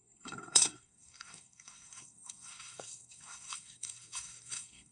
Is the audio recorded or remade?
remade